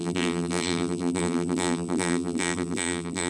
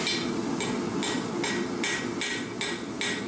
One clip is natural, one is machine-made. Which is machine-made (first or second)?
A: first